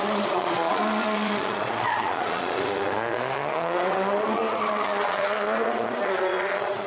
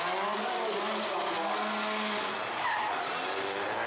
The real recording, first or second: second